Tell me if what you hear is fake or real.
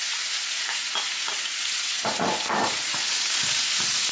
fake